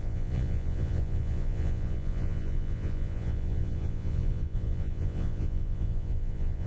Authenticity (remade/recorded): remade